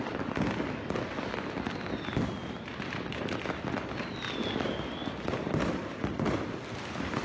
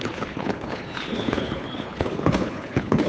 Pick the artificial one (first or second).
second